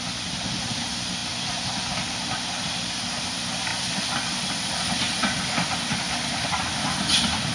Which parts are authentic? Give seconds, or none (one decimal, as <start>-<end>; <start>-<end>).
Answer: 0.0-3.7; 4.6-7.5